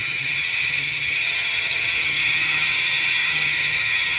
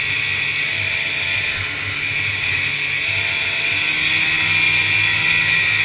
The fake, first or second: first